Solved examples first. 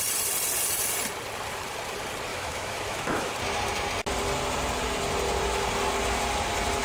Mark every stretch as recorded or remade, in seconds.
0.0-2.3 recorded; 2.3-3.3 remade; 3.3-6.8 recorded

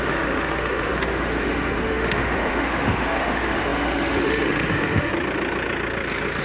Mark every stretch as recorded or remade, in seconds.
0.0-5.1 remade; 5.1-6.4 recorded

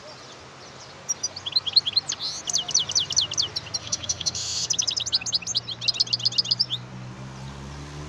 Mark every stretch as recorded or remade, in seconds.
0.0-3.8 recorded; 3.8-4.7 remade; 4.7-8.1 recorded

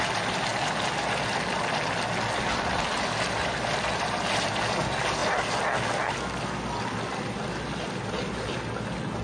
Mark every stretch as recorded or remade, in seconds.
0.0-9.2 recorded